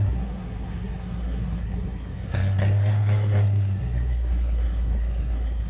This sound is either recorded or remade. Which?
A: remade